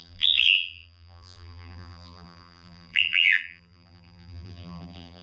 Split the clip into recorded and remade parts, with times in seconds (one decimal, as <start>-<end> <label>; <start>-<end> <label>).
0.0-5.2 remade